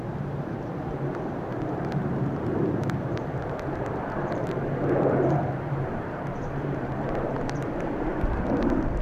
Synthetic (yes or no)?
yes